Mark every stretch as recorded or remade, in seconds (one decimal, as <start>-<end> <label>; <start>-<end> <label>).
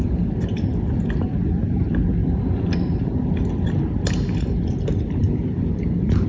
0.0-6.3 recorded